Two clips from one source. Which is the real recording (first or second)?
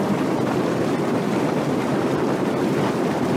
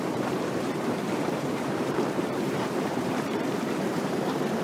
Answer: first